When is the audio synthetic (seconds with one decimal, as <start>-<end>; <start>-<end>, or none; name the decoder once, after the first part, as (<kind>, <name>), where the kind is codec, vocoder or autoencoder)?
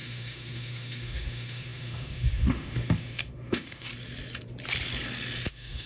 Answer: 0.0-3.9 (autoencoder, DAC-VAE); 5.5-5.9